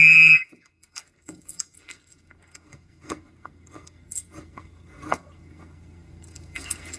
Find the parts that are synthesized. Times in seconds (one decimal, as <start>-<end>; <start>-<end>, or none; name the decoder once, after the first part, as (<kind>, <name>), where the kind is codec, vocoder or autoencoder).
0.0-7.0 (codec, SNAC)